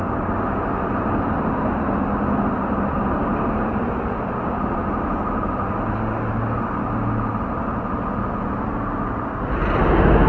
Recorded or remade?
recorded